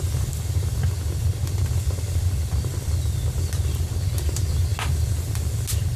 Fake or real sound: real